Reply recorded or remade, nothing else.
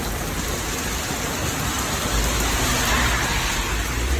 recorded